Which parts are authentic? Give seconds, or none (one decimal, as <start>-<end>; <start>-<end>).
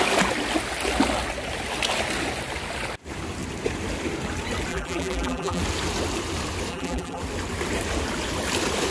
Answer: 0.0-4.7; 5.6-6.7; 7.2-8.9